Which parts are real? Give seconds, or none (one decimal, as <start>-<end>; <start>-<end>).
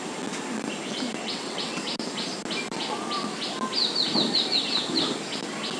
0.0-1.2; 1.8-5.8